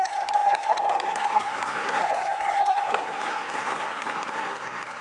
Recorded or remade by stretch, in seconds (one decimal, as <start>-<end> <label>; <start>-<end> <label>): 0.0-5.0 remade